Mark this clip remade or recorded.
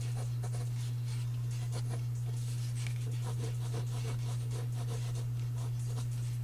recorded